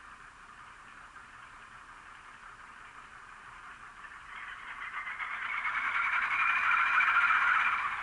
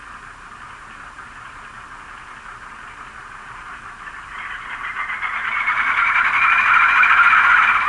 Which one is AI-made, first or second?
first